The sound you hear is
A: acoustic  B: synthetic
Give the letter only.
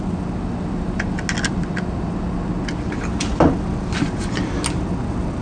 A